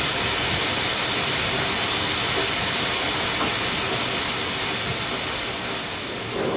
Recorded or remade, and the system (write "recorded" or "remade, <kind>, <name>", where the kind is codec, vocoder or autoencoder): recorded